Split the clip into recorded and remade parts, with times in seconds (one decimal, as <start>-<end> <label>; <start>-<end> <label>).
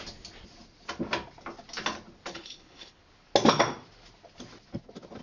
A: 0.0-2.3 recorded; 2.3-3.0 remade; 3.0-5.2 recorded